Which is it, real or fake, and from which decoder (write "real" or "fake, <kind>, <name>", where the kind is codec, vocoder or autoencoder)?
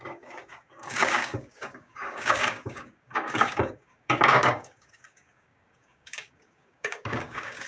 fake, codec, DAC